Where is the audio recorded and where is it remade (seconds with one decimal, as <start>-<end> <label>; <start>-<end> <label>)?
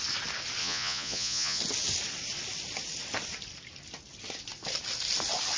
0.0-0.6 recorded; 0.6-1.6 remade; 1.6-5.6 recorded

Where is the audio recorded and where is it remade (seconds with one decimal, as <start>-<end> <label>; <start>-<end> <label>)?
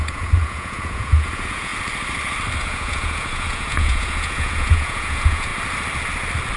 0.0-1.7 remade; 1.7-2.6 recorded; 2.6-5.5 remade; 5.5-6.6 recorded